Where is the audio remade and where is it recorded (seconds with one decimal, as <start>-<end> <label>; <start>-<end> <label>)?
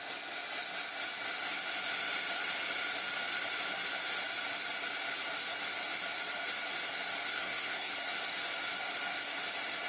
0.0-7.3 recorded; 7.3-7.9 remade; 7.9-9.9 recorded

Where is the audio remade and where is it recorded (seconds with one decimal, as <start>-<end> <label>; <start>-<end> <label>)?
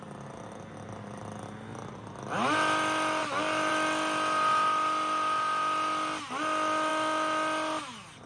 0.0-8.3 recorded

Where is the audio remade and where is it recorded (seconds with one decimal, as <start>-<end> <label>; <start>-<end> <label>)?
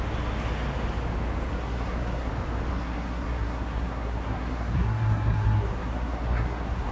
0.0-1.5 recorded; 1.5-2.3 remade; 2.3-2.7 recorded; 2.7-6.9 remade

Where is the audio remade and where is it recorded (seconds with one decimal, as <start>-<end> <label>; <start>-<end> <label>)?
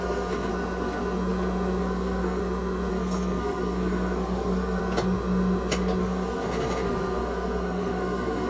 0.0-0.5 remade; 0.5-1.8 recorded; 1.8-2.4 remade; 2.4-2.9 recorded; 2.9-4.8 remade; 4.8-6.0 recorded; 6.0-8.5 remade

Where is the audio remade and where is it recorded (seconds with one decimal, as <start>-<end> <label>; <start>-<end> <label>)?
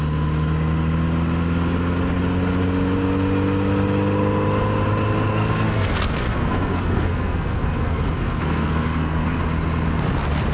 0.0-5.3 recorded; 5.3-9.4 remade; 9.4-10.5 recorded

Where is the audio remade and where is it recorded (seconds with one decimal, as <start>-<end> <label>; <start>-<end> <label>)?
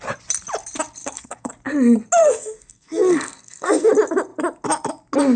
0.0-1.0 recorded; 1.0-1.5 remade; 1.5-2.2 recorded; 2.2-3.9 remade; 3.9-5.4 recorded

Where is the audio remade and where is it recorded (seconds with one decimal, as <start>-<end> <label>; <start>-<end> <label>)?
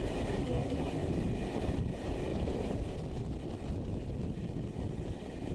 0.0-0.4 recorded; 0.4-1.1 remade; 1.1-5.5 recorded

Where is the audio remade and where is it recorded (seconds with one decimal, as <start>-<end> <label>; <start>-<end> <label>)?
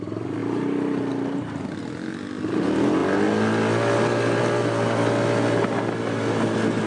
0.0-6.9 recorded